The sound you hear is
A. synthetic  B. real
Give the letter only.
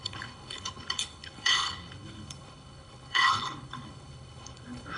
A